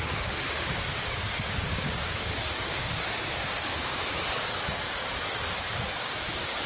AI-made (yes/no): yes